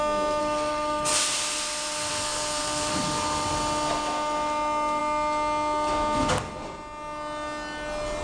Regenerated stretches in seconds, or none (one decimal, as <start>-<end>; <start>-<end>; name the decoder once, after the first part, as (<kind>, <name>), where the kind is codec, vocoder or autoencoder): 0.4-1.1 (codec, SNAC); 2.1-2.9